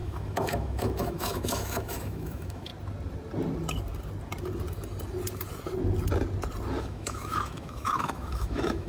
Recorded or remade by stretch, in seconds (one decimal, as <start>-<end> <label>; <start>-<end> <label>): 0.0-2.7 remade; 2.7-6.8 recorded; 6.8-8.9 remade